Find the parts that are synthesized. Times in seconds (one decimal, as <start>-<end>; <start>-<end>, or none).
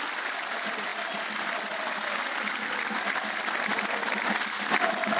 none